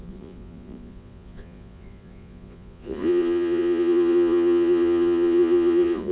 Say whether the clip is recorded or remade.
remade